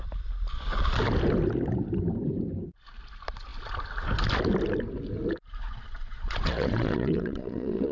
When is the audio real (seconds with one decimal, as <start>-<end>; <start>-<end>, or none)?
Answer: 0.0-5.7